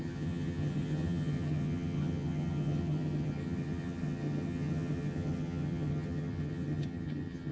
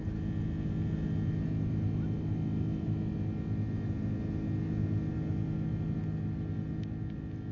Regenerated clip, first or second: first